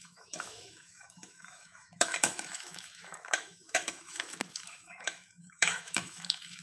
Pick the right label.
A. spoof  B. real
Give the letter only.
A